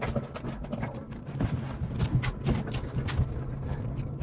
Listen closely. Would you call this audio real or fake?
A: real